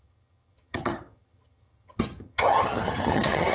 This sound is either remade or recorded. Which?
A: remade